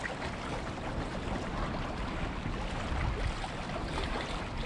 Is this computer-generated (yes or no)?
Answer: no